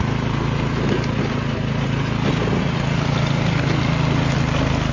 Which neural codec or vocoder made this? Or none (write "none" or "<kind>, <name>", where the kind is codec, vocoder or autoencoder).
none